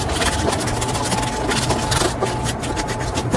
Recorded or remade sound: recorded